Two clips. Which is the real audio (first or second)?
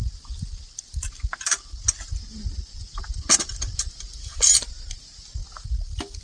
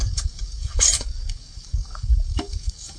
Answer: first